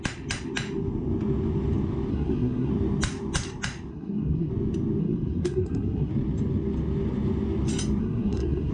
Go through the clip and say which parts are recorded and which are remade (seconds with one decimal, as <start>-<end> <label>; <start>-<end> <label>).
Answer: 0.0-2.1 recorded; 2.1-2.7 remade; 2.7-3.9 recorded; 3.9-4.5 remade; 4.5-5.0 recorded; 5.0-6.1 remade; 6.1-8.0 recorded; 8.0-8.7 remade